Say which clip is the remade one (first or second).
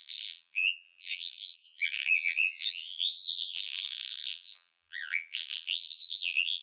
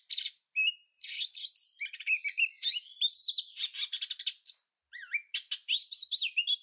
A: first